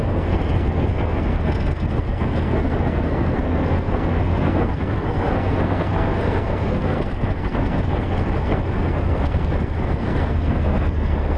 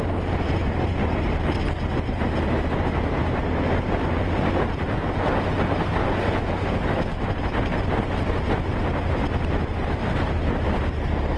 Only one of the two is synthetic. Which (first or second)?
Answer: first